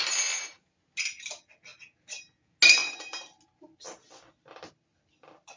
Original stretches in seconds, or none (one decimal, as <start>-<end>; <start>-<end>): 0.0-5.6